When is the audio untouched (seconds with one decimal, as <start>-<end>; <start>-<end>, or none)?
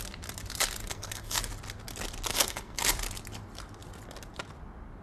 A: 0.0-0.8; 1.4-2.3; 2.8-5.0